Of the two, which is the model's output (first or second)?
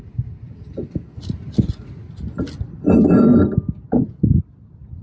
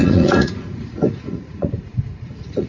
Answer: second